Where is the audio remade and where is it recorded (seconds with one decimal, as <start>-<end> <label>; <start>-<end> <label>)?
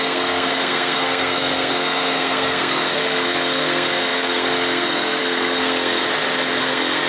0.0-6.0 remade; 6.0-6.6 recorded; 6.6-7.1 remade